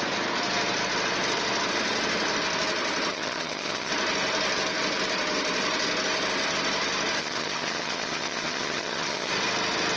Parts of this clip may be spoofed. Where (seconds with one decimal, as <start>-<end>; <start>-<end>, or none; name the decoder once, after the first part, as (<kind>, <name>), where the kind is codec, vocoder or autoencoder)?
3.1-3.9 (vocoder, HiFi-GAN); 7.2-9.3